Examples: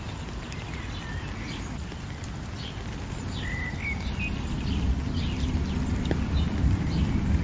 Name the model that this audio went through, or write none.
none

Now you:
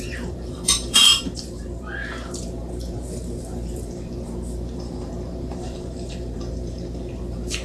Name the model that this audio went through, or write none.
vocoder, BigVGAN v2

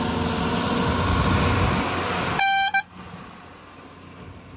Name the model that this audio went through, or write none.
none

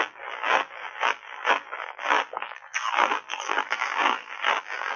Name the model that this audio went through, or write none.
vocoder, BigVGAN v2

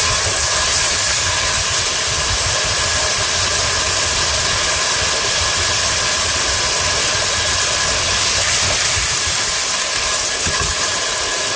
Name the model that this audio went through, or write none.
none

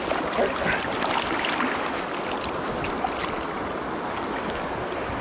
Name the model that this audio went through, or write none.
none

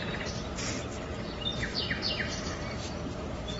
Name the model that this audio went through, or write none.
none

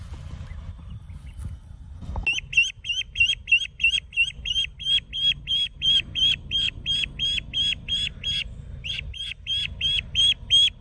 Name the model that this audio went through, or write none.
none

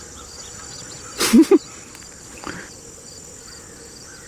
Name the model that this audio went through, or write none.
none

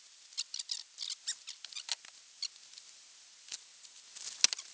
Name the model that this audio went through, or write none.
none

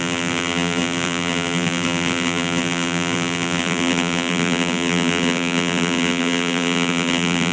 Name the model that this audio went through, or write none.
vocoder, BigVGAN v2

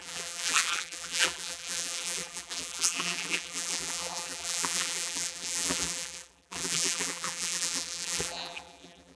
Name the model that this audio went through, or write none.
vocoder, BigVGAN v2